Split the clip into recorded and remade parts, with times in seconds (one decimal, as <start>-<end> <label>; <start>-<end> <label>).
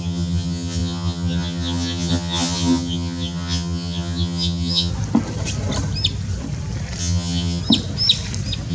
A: 0.0-4.9 remade; 4.9-7.0 recorded; 7.0-7.6 remade; 7.6-8.7 recorded